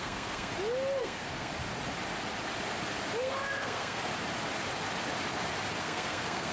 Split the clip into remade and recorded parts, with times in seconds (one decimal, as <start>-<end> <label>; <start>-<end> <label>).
0.0-0.5 remade; 0.5-1.0 recorded; 1.0-1.5 remade; 1.5-3.2 recorded; 3.2-4.1 remade; 4.1-5.8 recorded; 5.8-6.5 remade